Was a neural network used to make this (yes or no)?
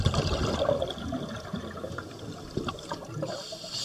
no